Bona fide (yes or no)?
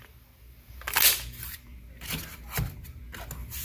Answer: yes